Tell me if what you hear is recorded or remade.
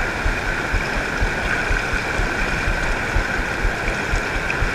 recorded